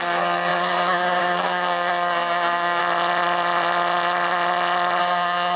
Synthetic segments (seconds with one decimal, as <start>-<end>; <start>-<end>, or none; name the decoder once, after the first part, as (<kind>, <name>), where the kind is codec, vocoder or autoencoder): 0.0-2.8 (codec, SNAC); 5.0-5.6